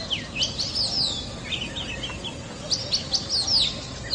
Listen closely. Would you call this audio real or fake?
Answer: real